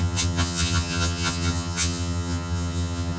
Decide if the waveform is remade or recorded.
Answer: remade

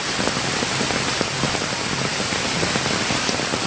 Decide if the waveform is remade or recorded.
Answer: recorded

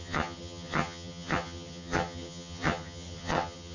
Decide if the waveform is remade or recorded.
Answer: remade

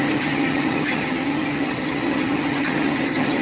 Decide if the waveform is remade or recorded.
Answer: remade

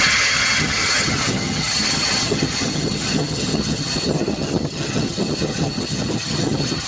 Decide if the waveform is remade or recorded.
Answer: remade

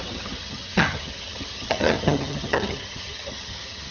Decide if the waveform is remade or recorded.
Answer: remade